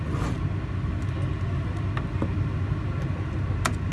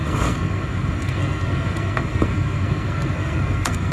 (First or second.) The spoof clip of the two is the second